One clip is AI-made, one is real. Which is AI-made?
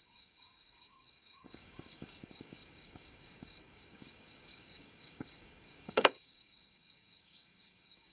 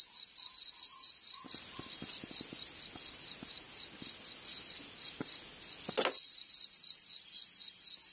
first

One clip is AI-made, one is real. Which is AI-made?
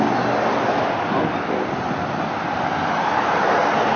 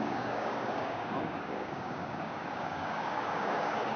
second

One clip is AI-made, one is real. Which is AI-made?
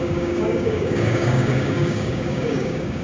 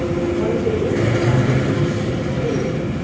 first